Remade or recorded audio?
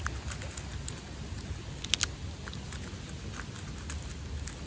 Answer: recorded